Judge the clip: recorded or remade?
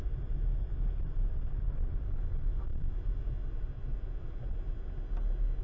recorded